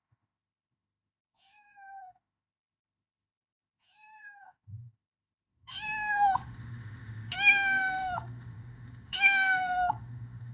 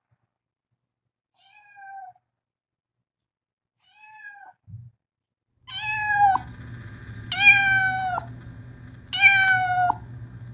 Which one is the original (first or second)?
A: second